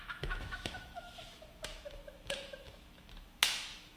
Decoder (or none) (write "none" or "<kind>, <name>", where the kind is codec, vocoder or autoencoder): autoencoder, DAC-VAE